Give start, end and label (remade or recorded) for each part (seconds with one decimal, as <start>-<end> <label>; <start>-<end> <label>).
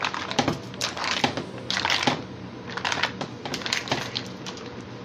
0.0-5.0 recorded